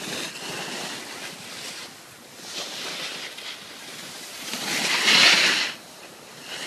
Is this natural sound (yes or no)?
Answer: yes